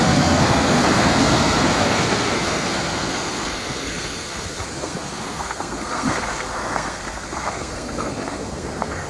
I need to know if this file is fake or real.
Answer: fake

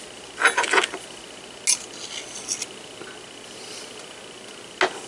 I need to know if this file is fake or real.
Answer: real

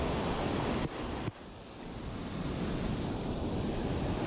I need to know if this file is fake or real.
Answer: real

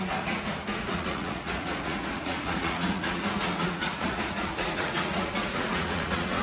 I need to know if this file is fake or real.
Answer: fake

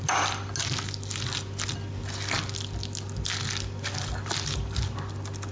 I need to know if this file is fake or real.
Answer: real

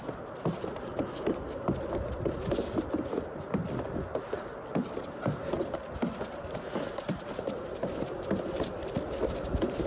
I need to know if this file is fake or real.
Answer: real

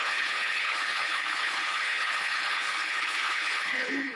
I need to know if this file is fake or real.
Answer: fake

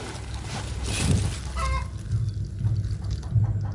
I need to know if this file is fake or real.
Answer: real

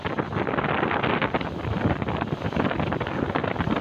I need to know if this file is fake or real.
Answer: real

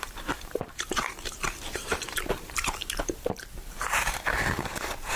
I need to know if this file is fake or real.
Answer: fake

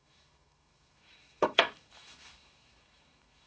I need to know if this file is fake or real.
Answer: fake